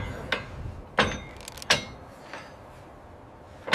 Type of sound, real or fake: real